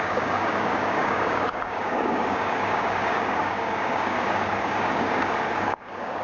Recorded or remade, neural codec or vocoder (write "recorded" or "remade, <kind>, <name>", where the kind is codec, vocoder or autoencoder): remade, codec, DAC